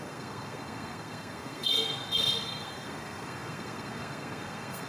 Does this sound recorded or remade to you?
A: remade